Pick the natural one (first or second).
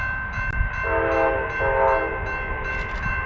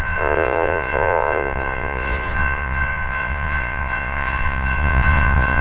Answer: first